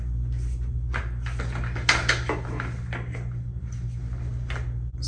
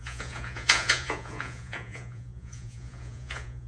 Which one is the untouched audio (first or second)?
first